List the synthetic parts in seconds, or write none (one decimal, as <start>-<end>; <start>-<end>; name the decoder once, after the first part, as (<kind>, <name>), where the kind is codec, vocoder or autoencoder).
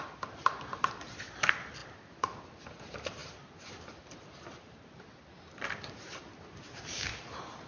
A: none